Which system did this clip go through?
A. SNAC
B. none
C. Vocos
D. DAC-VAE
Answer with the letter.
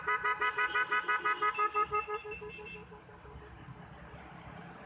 B